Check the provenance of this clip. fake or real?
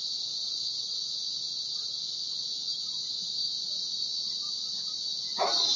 fake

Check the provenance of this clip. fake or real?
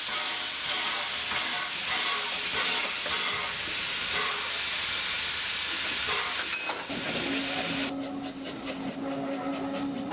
real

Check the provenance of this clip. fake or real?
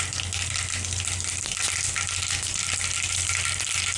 real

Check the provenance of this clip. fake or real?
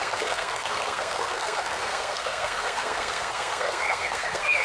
fake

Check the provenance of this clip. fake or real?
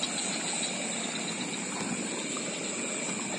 real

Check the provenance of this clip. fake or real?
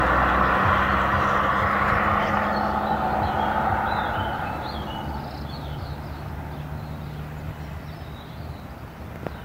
real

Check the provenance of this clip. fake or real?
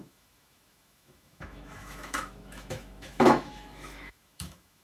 fake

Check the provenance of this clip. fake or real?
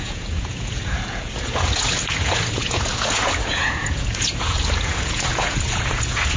fake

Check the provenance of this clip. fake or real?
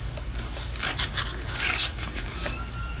fake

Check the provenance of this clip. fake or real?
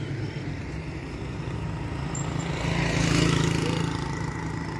real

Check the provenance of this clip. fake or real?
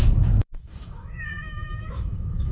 fake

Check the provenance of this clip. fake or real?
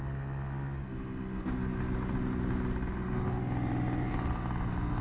real